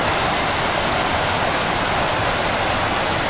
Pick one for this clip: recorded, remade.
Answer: recorded